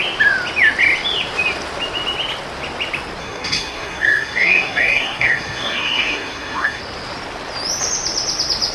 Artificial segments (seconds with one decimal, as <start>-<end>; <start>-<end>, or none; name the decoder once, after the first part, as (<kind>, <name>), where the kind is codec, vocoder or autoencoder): 3.2-6.8 (codec, SNAC)